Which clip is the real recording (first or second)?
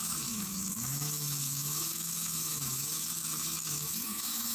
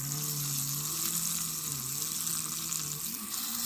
second